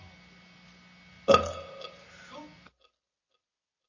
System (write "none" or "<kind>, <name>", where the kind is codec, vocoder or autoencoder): none